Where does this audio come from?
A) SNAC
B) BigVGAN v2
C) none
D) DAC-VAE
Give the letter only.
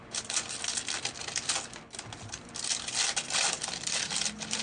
B